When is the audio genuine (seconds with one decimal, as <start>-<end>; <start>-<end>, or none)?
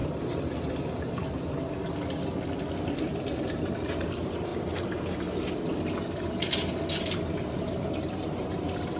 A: 0.0-3.1; 4.5-6.9